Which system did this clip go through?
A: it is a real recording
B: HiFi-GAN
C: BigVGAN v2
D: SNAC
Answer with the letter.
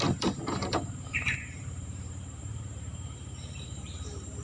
C